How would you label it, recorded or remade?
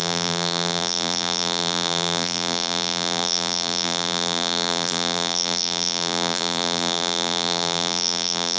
remade